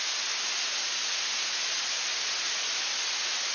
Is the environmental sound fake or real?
real